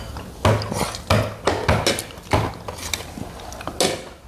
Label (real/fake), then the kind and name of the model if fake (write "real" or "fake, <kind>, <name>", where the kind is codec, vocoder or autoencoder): real